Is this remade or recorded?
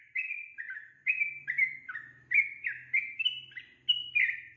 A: recorded